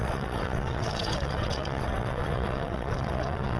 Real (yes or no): no